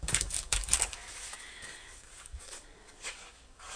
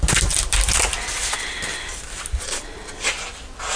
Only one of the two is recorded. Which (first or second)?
second